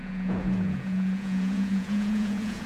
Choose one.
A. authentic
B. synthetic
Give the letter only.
B